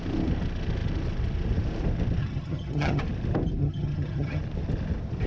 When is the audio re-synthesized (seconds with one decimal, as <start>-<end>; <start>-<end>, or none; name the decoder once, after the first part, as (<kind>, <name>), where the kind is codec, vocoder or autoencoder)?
2.2-3.0 (vocoder, HiFi-GAN); 3.6-4.4